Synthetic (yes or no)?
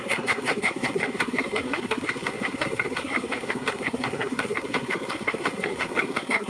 yes